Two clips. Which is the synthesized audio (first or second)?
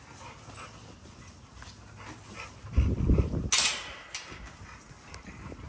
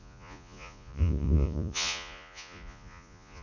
second